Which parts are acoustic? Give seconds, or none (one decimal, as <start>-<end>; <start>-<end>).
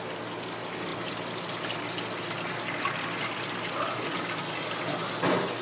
0.0-5.6